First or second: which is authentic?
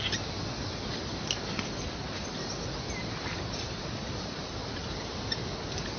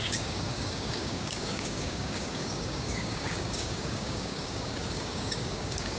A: first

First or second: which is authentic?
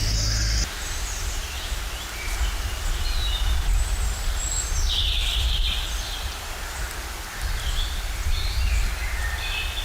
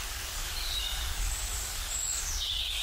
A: first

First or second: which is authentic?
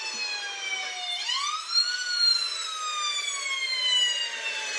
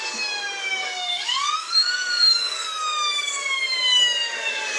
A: first